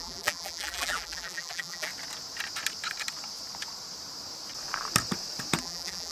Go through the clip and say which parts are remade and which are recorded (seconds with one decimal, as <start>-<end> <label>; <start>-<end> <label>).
0.0-1.9 remade; 1.9-5.6 recorded; 5.6-6.1 remade